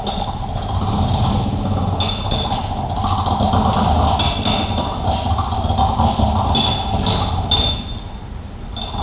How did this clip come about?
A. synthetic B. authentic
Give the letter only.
B